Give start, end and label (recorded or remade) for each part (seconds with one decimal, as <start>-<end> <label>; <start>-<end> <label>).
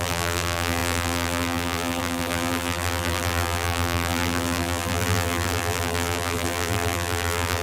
0.0-7.6 remade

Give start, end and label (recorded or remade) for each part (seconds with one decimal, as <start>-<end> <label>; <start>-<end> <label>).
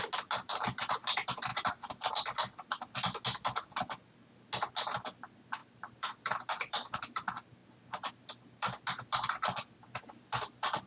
0.0-1.5 recorded; 1.5-2.1 remade; 2.1-5.6 recorded; 5.6-7.0 remade; 7.0-10.9 recorded